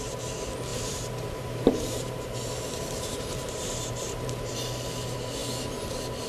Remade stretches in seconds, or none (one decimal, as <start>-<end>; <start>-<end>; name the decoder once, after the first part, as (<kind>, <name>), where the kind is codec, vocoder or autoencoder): 0.7-4.5 (vocoder, BigVGAN v2)